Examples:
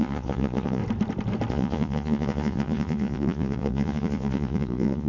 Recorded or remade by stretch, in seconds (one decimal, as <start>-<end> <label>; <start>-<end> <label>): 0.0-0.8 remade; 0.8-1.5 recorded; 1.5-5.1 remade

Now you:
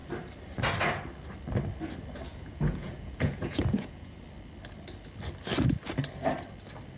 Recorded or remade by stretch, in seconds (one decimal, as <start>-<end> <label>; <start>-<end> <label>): 0.0-2.3 recorded; 2.3-4.2 remade; 4.2-7.0 recorded

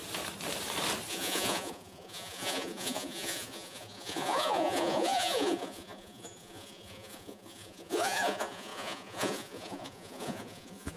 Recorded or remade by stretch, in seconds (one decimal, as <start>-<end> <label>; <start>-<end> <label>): 0.0-1.1 recorded; 1.1-11.0 remade

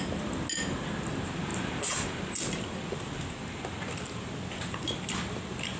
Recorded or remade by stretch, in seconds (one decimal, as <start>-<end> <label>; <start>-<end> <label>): 0.0-5.8 recorded